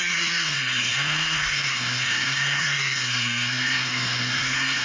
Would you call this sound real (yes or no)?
no